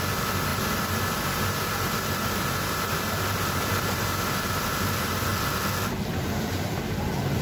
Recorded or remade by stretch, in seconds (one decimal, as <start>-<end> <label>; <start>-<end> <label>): 0.0-5.3 remade; 5.3-6.2 recorded; 6.2-7.4 remade

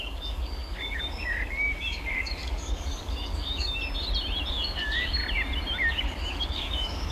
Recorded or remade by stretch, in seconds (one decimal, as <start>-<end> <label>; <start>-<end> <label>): 0.0-3.8 remade; 3.8-4.5 recorded; 4.5-5.2 remade; 5.2-5.9 recorded; 5.9-7.1 remade

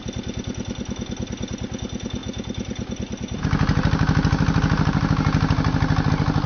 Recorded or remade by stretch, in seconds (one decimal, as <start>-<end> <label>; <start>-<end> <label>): 0.0-6.5 recorded

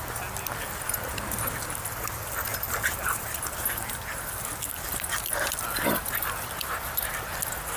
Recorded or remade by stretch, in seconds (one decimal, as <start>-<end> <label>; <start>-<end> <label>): 0.0-7.8 recorded